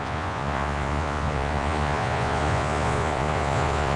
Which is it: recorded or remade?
remade